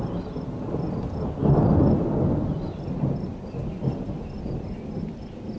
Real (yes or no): no